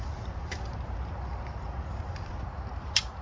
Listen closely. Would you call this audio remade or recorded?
remade